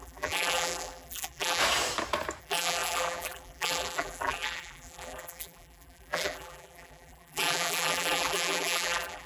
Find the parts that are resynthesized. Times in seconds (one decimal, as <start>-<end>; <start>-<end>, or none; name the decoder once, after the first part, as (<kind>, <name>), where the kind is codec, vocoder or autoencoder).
0.0-1.6 (vocoder, BigVGAN v2); 2.4-9.3